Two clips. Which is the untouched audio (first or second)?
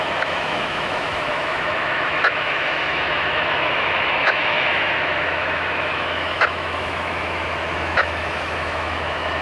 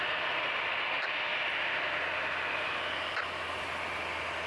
second